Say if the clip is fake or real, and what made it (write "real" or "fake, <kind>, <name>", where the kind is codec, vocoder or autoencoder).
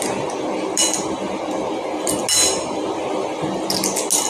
real